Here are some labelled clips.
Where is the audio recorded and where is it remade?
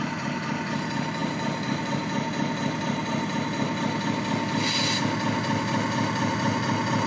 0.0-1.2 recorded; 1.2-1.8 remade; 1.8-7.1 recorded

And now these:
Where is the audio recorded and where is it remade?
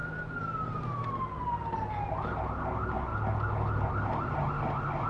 0.0-5.1 recorded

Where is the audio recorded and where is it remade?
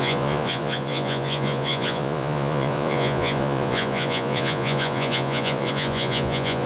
0.0-6.7 remade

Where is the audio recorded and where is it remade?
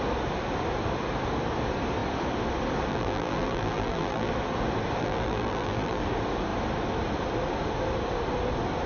0.0-2.9 recorded; 2.9-4.3 remade; 4.3-5.0 recorded; 5.0-6.0 remade; 6.0-8.9 recorded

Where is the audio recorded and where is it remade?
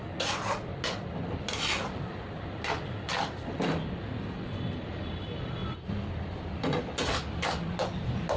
0.0-8.4 recorded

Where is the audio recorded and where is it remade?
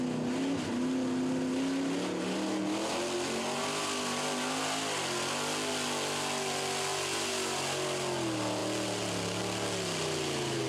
0.0-10.7 recorded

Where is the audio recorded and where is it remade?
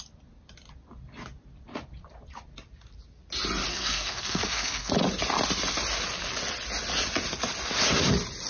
0.0-3.7 recorded; 3.7-4.9 remade; 4.9-8.5 recorded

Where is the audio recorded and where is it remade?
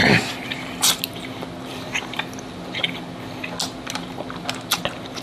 0.0-1.0 remade; 1.0-5.2 recorded